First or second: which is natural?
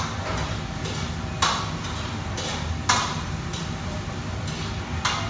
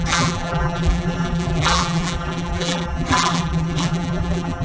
first